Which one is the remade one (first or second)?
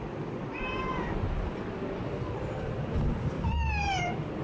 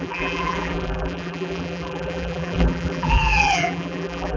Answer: second